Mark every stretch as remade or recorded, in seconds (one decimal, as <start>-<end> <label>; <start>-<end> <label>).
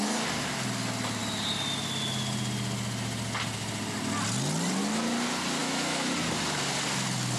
0.0-5.6 recorded; 5.6-6.1 remade; 6.1-7.4 recorded